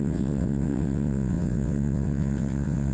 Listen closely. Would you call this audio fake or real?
fake